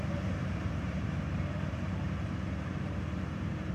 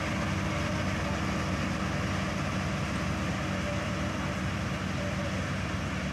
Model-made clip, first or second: first